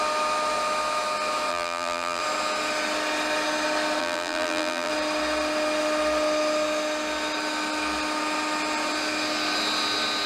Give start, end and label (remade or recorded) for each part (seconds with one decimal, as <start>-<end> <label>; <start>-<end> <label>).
0.0-1.5 recorded; 1.5-2.2 remade; 2.2-4.0 recorded; 4.0-4.9 remade; 4.9-10.3 recorded